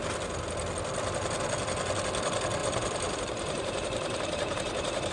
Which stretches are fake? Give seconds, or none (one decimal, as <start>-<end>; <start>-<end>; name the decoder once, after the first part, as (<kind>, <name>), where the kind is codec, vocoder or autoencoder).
2.6-5.1 (vocoder, BigVGAN v2)